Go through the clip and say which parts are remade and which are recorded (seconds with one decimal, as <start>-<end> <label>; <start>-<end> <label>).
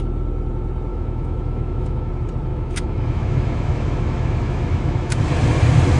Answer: 0.0-0.9 recorded; 0.9-2.1 remade; 2.1-2.5 recorded; 2.5-5.2 remade; 5.2-6.0 recorded